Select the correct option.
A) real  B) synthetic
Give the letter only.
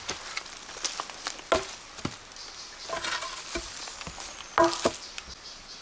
A